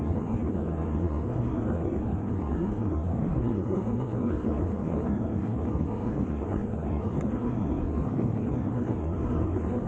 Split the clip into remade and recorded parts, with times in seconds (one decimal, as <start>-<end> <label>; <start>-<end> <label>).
0.0-9.9 remade